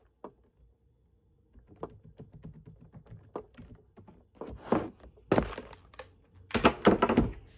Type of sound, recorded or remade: recorded